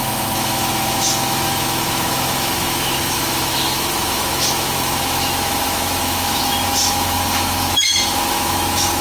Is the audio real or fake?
fake